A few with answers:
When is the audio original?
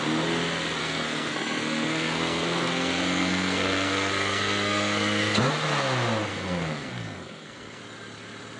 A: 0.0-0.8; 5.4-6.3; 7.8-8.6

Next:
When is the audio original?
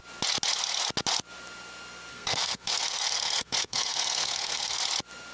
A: 0.0-2.1; 4.8-5.3